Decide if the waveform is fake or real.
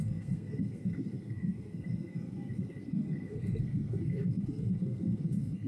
fake